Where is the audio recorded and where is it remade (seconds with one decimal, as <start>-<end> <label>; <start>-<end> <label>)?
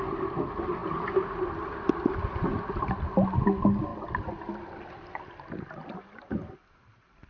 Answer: 0.0-7.3 recorded